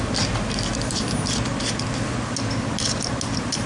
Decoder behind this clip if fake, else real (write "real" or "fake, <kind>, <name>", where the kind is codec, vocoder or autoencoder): real